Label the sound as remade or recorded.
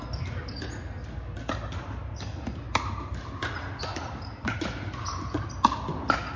recorded